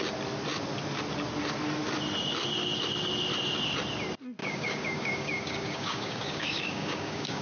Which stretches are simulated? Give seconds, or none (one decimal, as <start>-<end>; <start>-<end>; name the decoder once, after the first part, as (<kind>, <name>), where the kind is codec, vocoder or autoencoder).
4.4-7.4 (codec, DAC)